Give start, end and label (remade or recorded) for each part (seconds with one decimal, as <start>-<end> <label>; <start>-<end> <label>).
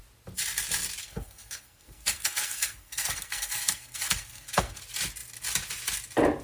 0.0-1.0 recorded; 1.0-4.8 remade; 4.8-6.4 recorded